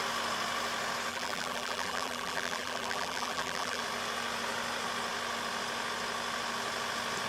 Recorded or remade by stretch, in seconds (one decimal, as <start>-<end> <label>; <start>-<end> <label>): 0.0-1.1 recorded; 1.1-3.8 remade; 3.8-7.3 recorded